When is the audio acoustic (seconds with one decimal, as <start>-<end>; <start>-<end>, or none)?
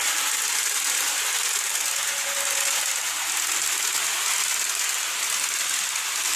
0.0-6.4